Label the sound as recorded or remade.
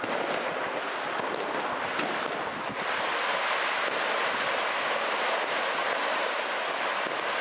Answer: recorded